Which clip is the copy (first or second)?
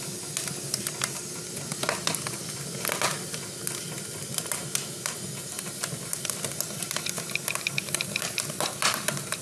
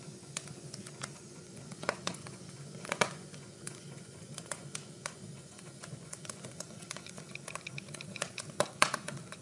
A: second